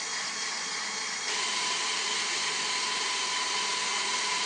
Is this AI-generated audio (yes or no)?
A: no